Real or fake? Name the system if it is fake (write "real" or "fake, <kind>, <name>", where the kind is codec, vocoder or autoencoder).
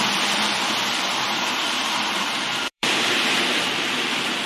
fake, vocoder, BigVGAN v2